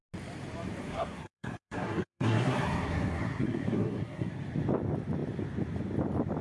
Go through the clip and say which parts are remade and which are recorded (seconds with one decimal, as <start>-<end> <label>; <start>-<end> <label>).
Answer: 0.0-0.8 recorded; 0.8-4.3 remade; 4.3-6.4 recorded